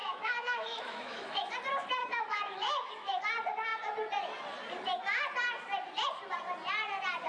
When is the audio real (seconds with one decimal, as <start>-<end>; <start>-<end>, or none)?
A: 1.5-2.0; 3.2-7.3